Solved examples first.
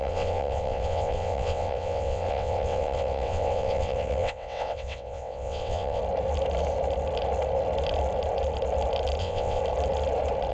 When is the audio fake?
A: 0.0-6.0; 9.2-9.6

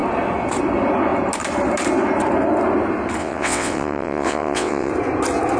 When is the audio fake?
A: 3.2-4.9